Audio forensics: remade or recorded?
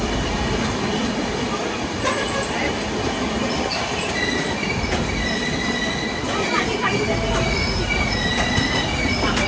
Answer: recorded